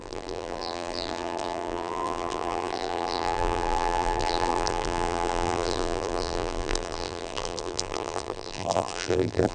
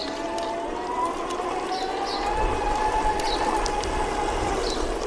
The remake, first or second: first